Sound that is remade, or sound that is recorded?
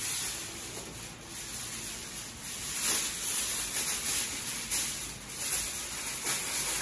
recorded